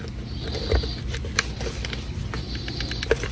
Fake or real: fake